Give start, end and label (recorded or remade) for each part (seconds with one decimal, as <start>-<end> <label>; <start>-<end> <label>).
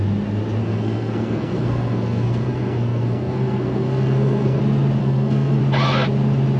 0.0-0.6 recorded; 0.6-4.6 remade; 4.6-5.0 recorded; 5.0-5.6 remade; 5.6-6.6 recorded